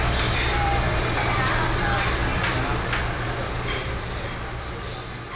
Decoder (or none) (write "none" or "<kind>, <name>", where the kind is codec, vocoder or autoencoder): none